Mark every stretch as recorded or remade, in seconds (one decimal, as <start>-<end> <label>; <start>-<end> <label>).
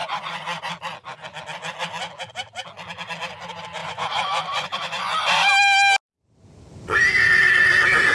0.0-0.7 remade; 0.7-3.8 recorded; 3.8-5.5 remade; 5.5-8.1 recorded